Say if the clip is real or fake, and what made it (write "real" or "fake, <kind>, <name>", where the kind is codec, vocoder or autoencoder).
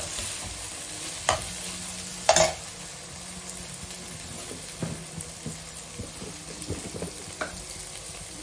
real